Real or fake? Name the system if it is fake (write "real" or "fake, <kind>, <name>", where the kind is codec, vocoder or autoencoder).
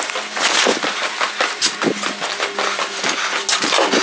real